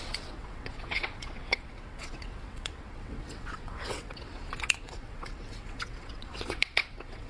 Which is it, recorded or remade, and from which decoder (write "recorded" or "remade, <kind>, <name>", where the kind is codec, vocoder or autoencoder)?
remade, vocoder, WaveNeXt